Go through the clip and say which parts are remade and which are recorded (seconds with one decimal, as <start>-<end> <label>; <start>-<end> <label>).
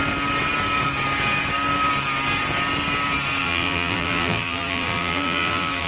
0.0-3.4 recorded; 3.4-5.9 remade